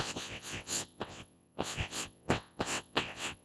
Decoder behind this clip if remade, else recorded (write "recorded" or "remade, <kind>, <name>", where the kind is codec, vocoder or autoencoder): remade, vocoder, WaveNeXt